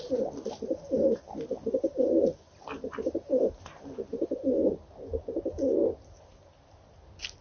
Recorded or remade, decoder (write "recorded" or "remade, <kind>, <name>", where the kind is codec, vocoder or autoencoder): recorded